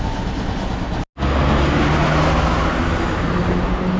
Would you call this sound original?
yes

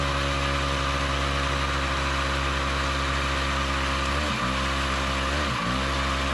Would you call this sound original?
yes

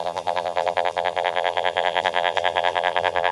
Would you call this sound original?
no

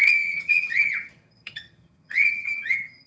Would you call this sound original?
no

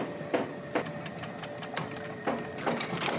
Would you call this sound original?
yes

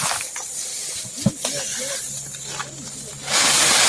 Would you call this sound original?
yes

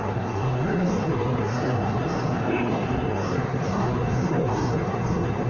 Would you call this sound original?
no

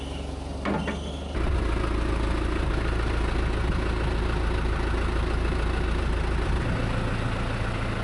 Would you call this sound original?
yes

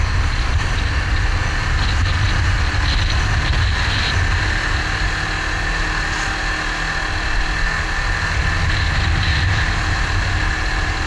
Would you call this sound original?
yes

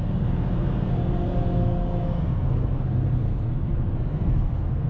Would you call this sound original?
no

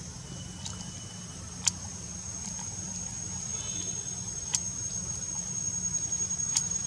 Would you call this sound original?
yes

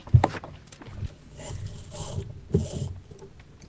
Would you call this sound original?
yes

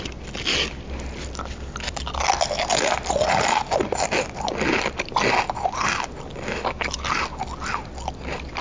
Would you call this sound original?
yes